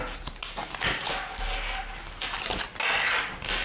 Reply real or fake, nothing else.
real